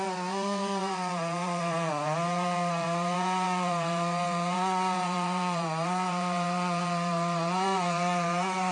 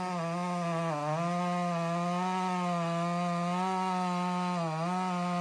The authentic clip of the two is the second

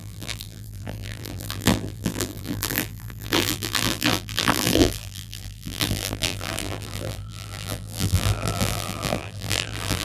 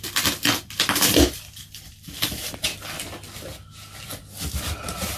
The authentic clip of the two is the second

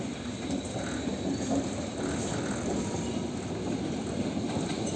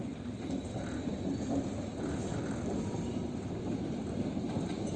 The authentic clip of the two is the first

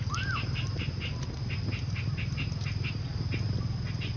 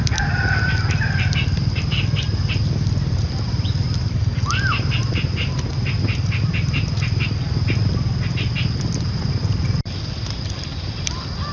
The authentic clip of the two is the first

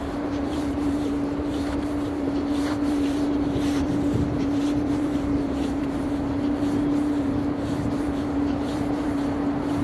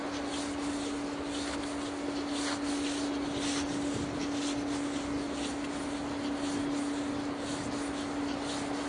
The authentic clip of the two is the second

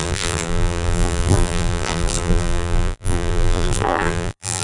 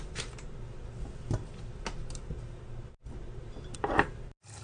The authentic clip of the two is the second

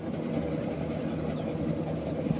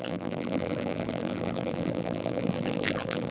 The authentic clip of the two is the first